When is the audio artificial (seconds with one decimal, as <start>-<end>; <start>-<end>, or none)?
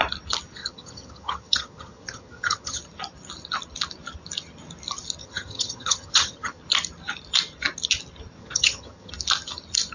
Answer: 0.6-2.8; 5.2-6.6; 8.4-9.1